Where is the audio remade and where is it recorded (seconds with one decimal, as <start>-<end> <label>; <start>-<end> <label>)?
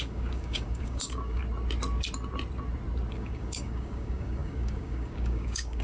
0.0-1.4 remade; 1.4-3.1 recorded; 3.1-5.8 remade